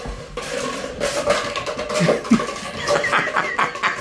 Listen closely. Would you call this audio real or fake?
real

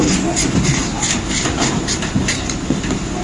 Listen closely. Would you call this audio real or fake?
real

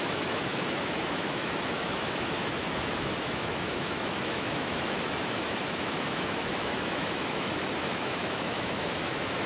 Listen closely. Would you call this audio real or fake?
fake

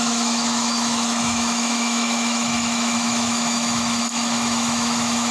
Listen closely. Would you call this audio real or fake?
fake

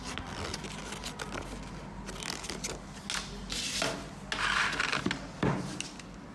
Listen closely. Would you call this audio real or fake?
real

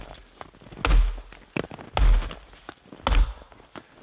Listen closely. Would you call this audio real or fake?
real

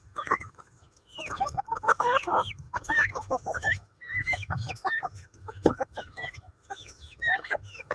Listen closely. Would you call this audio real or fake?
fake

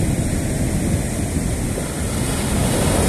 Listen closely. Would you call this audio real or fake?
real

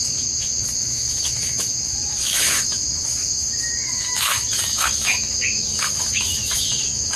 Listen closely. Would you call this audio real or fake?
fake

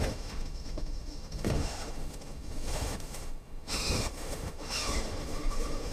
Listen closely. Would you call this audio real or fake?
fake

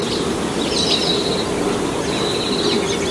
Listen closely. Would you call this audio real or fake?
real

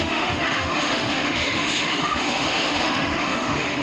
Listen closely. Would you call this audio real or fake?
fake